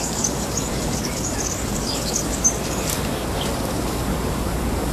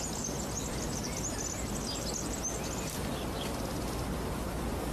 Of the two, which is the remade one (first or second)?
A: first